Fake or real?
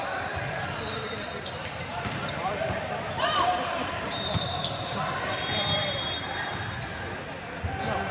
fake